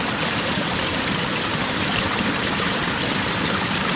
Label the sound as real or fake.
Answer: fake